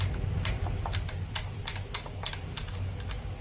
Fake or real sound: real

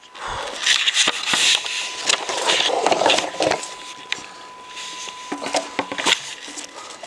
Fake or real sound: real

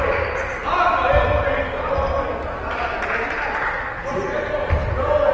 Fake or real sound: real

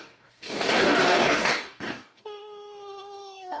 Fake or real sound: fake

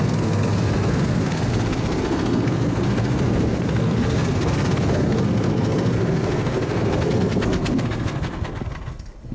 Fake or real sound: fake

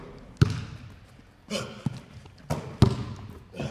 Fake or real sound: real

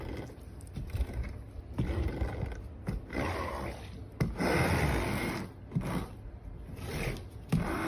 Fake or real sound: real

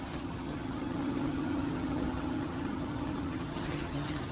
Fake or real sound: fake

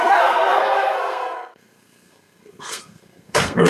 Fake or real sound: fake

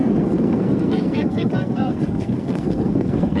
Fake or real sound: fake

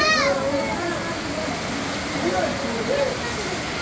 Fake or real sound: real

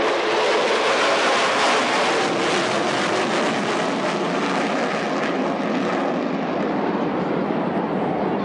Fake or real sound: real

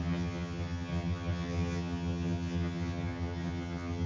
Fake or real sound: fake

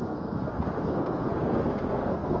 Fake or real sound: fake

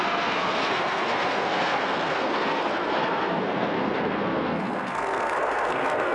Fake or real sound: fake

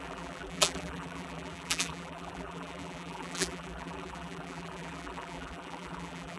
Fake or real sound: fake